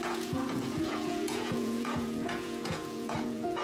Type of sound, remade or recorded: remade